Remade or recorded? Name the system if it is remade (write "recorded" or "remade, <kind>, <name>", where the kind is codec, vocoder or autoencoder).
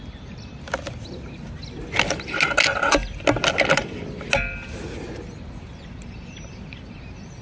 recorded